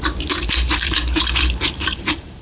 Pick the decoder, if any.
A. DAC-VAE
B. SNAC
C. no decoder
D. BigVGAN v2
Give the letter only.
D